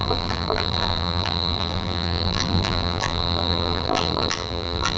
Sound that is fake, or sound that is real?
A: fake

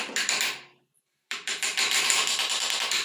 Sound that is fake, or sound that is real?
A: fake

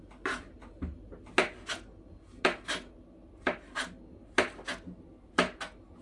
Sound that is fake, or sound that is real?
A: real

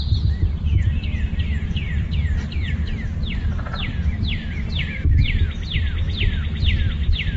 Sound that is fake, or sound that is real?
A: fake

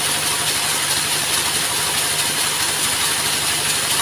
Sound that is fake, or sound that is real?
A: real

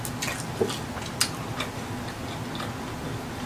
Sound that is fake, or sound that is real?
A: real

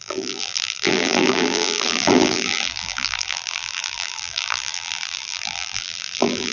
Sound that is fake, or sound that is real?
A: fake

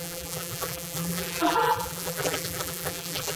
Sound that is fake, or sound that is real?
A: fake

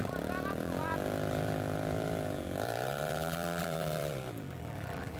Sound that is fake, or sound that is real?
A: fake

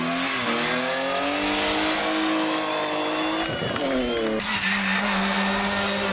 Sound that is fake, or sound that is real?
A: real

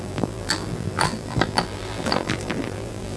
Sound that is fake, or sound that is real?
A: fake